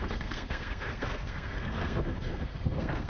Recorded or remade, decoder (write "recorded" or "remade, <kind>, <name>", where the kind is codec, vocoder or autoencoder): remade, codec, SNAC